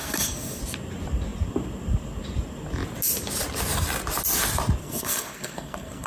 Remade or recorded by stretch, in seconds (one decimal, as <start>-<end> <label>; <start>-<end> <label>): 0.0-0.6 remade; 0.6-4.8 recorded; 4.8-6.1 remade